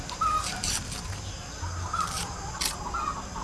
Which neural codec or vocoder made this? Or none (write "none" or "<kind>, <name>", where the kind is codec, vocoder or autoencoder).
none